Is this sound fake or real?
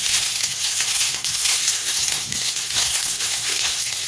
fake